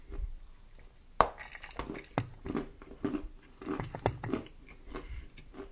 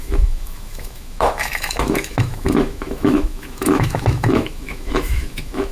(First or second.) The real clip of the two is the first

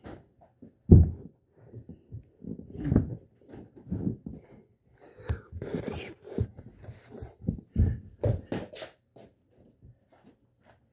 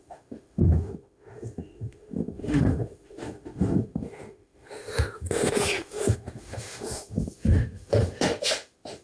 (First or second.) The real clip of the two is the first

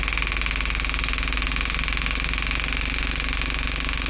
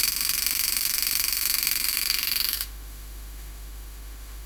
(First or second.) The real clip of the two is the first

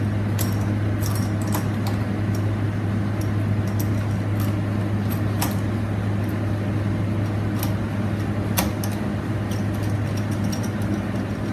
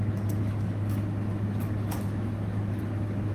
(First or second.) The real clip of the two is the first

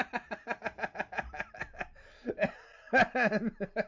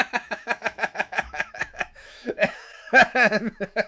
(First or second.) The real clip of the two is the first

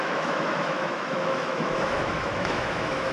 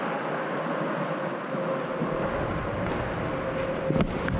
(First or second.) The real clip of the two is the second